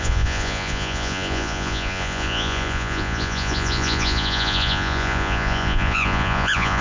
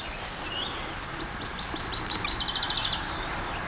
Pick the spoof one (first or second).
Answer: first